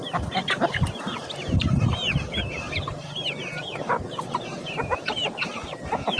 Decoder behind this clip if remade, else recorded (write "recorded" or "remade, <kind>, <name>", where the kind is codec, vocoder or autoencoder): remade, vocoder, BigVGAN v2